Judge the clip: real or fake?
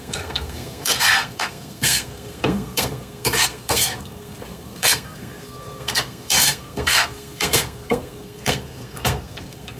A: fake